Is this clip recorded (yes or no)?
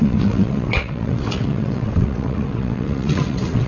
no